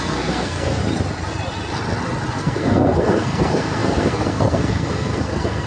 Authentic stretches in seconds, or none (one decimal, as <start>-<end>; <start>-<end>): 0.8-2.3